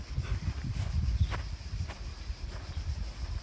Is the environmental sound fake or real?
real